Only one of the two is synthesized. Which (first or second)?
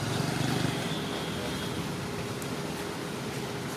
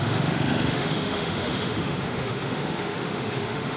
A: second